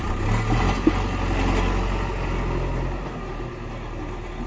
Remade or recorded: recorded